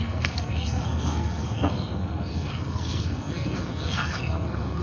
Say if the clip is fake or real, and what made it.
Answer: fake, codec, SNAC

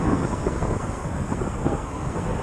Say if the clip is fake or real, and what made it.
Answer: fake, codec, SNAC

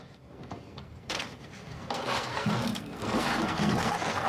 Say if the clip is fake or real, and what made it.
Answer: fake, codec, SNAC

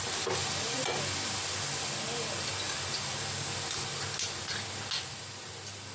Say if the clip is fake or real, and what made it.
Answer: real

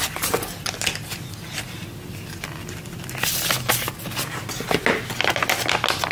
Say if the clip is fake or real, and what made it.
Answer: real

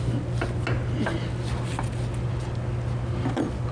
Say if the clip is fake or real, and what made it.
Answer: real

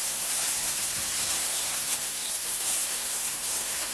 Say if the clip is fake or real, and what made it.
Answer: fake, codec, SNAC